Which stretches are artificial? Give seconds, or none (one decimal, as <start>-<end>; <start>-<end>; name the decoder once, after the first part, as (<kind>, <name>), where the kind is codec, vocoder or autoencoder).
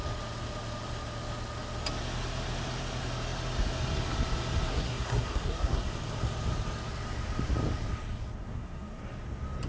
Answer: 4.7-5.8 (codec, SNAC); 8.4-9.0